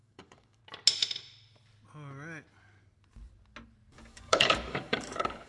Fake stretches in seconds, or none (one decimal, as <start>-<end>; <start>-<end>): 0.0-0.6; 3.9-5.5